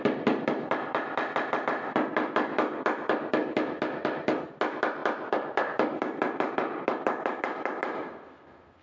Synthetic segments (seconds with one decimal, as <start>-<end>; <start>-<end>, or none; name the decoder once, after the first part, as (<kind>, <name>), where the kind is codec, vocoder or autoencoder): none